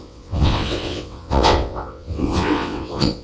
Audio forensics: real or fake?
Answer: fake